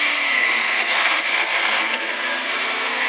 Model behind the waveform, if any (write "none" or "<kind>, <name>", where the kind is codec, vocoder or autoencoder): codec, SNAC